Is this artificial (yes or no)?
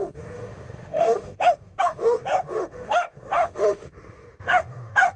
yes